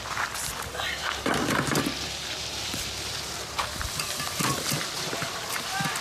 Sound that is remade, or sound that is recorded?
remade